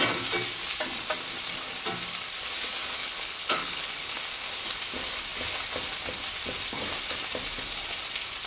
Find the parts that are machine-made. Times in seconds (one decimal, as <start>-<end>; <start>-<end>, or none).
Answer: 3.0-4.2